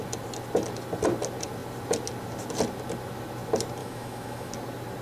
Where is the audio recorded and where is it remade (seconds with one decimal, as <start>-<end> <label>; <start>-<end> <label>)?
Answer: 0.0-3.8 recorded; 3.8-4.5 remade; 4.5-5.0 recorded